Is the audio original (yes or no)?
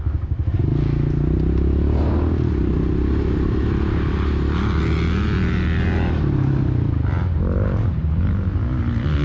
yes